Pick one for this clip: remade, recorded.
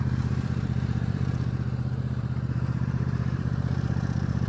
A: remade